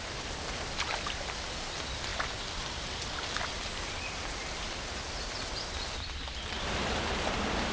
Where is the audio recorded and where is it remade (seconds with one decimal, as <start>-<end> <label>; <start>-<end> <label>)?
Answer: 0.0-7.7 recorded

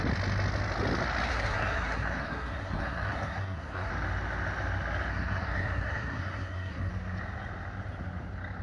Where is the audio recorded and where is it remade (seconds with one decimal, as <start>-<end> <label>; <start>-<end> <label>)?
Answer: 0.0-1.3 recorded; 1.3-3.9 remade; 3.9-5.1 recorded; 5.1-6.9 remade; 6.9-8.6 recorded

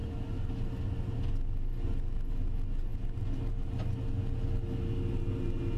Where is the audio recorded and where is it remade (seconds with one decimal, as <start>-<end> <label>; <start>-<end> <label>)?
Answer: 0.0-5.8 recorded

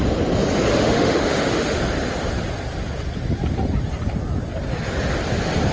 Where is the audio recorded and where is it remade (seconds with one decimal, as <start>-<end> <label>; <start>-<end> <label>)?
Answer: 0.0-0.7 recorded; 0.7-1.8 remade; 1.8-5.7 recorded

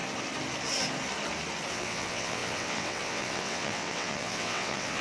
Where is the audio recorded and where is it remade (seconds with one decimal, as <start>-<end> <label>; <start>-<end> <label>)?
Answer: 0.0-1.7 recorded; 1.7-5.0 remade

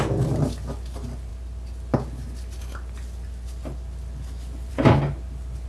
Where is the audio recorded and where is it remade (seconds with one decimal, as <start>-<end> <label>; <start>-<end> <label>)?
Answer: 0.0-5.7 recorded

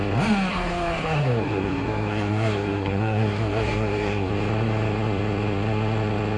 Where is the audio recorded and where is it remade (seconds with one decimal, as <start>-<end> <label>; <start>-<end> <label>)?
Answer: 0.0-0.5 recorded; 0.5-4.3 remade; 4.3-6.4 recorded